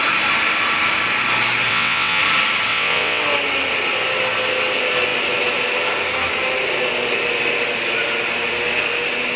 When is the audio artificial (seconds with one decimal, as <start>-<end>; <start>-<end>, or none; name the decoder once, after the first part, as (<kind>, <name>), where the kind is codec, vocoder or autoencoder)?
1.7-2.2 (vocoder, WaveNeXt); 2.7-3.2